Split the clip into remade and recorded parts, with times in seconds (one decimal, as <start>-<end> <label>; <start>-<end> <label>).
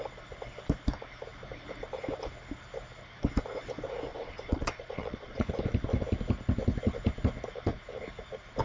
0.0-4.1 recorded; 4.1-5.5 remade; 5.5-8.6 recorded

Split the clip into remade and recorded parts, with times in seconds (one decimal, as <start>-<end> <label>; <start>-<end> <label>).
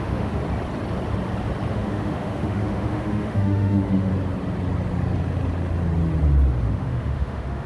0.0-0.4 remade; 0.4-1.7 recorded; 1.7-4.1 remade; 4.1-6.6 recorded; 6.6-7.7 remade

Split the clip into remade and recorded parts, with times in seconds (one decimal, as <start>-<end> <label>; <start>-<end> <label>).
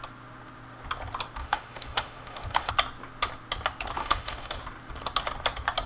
0.0-1.4 recorded; 1.4-2.7 remade; 2.7-4.0 recorded; 4.0-4.6 remade; 4.6-5.9 recorded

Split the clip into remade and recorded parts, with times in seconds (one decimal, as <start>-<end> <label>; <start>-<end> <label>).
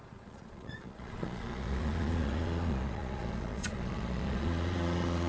0.0-5.3 remade